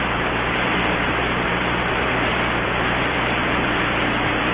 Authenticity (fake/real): fake